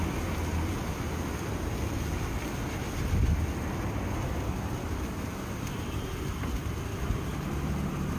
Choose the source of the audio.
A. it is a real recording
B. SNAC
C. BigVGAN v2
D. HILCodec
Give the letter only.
A